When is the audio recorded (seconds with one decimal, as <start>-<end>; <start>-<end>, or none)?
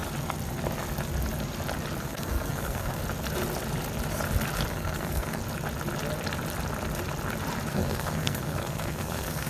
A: 0.0-2.0; 3.0-4.7; 5.4-7.7